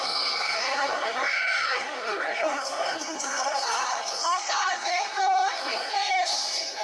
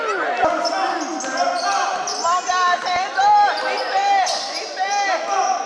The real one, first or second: second